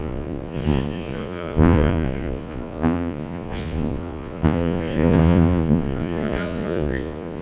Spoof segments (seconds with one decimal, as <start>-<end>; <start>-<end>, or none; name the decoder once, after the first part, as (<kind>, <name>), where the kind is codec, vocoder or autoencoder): 0.0-7.4 (vocoder, Vocos)